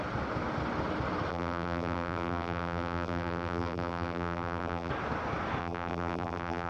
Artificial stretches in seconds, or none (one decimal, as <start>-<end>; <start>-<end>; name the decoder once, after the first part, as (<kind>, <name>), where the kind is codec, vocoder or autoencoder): 1.3-4.9 (vocoder, BigVGAN v2); 5.6-6.7